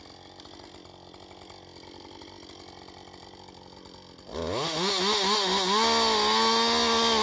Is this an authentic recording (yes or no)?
yes